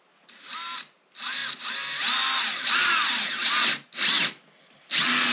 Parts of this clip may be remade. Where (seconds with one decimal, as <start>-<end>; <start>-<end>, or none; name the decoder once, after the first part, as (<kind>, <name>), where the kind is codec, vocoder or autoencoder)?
2.8-3.5 (vocoder, BigVGAN v2)